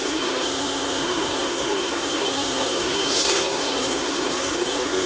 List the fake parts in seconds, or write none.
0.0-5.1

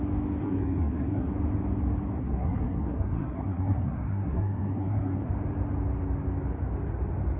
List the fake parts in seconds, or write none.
0.4-1.3; 2.2-5.3

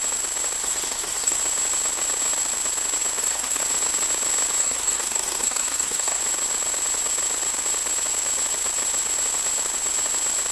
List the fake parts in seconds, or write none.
0.6-1.4; 3.2-3.6; 4.6-6.2

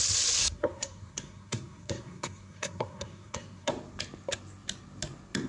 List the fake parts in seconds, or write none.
0.4-3.7

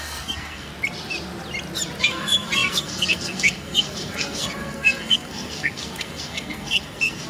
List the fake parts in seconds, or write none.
0.0-0.7; 2.0-7.3

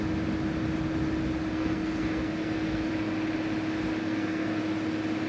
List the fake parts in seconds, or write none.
1.5-2.9; 4.0-4.6

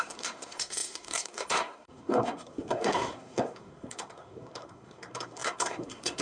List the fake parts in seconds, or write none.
0.0-6.2